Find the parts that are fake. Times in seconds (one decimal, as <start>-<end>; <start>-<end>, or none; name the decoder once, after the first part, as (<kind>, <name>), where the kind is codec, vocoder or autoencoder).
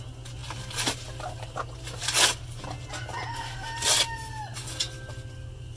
none